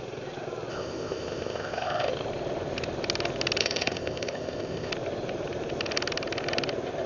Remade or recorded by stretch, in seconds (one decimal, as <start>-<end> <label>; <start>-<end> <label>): 0.0-0.7 recorded; 0.7-2.1 remade; 2.1-3.6 recorded; 3.6-4.9 remade; 4.9-7.1 recorded